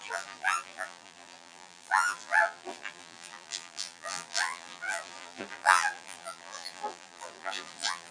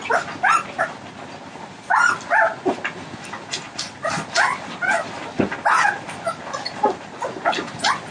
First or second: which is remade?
first